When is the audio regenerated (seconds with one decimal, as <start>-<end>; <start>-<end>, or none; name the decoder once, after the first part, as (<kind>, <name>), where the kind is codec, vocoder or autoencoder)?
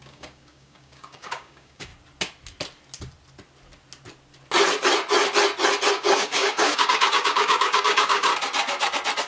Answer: 0.0-1.9 (codec, DAC); 5.9-8.3